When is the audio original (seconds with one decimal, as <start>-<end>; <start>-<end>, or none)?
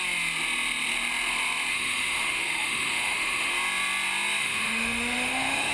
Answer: 0.0-1.7; 3.5-4.4